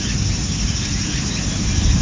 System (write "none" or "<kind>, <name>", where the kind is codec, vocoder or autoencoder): none